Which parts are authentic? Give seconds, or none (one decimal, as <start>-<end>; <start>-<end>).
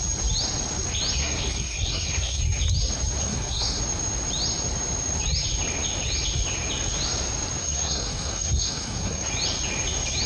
0.0-1.2; 2.4-3.2; 3.8-7.6; 9.3-10.3